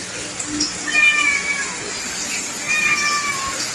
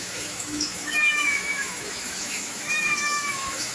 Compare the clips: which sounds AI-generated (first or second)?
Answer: second